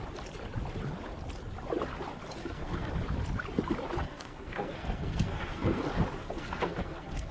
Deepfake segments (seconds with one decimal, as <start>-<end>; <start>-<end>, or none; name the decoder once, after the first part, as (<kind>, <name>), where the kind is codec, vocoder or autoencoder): 2.4-2.9 (codec, SNAC); 4.0-5.8; 6.2-7.3